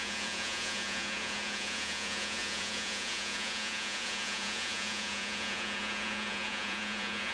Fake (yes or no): yes